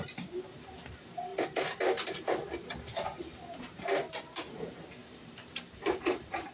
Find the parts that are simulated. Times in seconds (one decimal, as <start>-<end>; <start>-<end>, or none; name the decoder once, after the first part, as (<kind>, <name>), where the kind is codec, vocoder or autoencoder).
0.0-1.3 (vocoder, BigVGAN v2); 3.6-6.5